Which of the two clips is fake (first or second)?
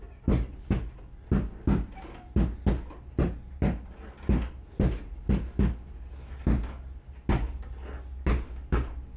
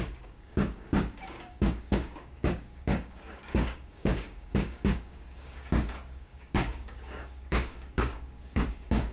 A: second